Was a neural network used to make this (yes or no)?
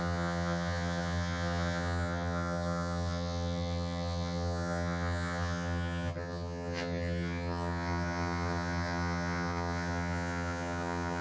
yes